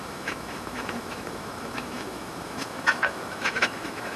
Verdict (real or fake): fake